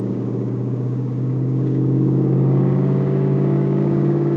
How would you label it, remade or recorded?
remade